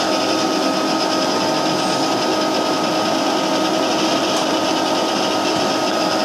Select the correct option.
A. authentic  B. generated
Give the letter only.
A